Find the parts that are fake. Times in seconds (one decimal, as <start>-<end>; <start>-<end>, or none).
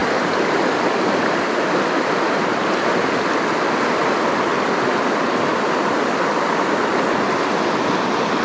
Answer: none